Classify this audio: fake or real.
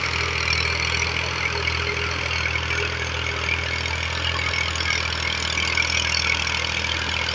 real